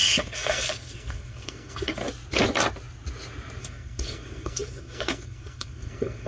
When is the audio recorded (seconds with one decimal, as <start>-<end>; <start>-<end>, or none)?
2.0-3.6